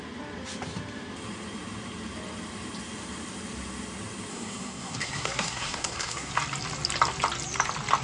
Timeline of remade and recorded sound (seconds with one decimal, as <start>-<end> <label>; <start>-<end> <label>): 0.0-4.3 recorded; 4.3-6.3 remade; 6.3-8.0 recorded